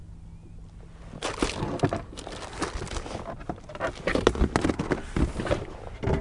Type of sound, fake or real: real